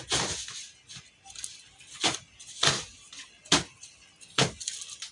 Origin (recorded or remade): recorded